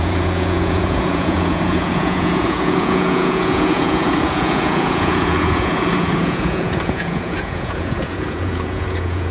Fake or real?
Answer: fake